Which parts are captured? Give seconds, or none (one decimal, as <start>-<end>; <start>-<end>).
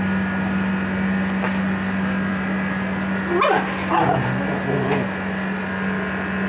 0.0-6.5